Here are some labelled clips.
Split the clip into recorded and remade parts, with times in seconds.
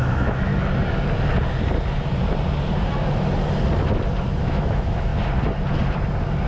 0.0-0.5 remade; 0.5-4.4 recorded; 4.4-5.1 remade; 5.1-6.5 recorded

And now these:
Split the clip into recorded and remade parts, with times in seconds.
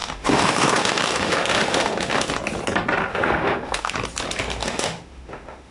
0.0-2.3 remade; 2.3-3.1 recorded; 3.1-3.9 remade; 3.9-4.6 recorded; 4.6-5.7 remade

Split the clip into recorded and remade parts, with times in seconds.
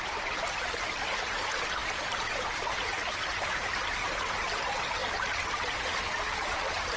0.0-7.0 recorded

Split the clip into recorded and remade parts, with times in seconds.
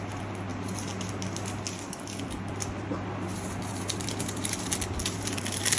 0.0-5.8 recorded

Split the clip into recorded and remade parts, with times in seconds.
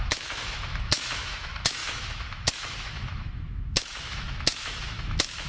0.0-5.5 remade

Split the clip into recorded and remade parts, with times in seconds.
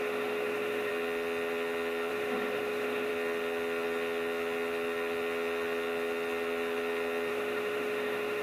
0.0-0.9 remade; 0.9-2.1 recorded; 2.1-3.1 remade; 3.1-7.3 recorded; 7.3-8.4 remade